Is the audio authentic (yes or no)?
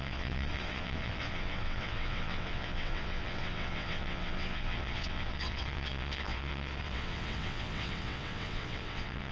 no